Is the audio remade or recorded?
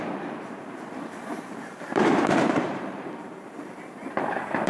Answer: remade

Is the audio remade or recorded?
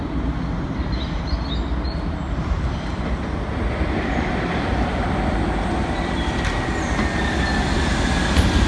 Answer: recorded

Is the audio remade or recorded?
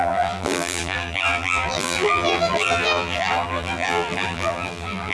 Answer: remade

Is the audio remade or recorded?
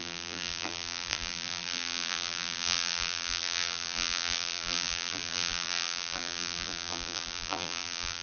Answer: remade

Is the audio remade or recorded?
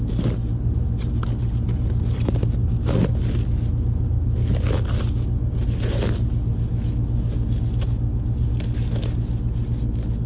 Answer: recorded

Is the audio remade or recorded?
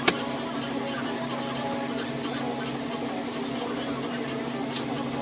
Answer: recorded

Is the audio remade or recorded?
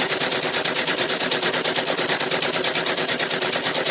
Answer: remade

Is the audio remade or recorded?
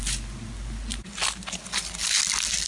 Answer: recorded